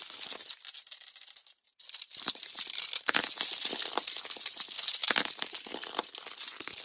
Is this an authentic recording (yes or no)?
yes